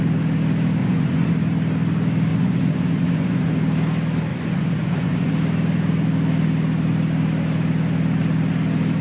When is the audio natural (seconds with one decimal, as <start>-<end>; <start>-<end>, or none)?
0.0-0.8; 1.3-2.3; 3.5-4.3; 5.3-9.0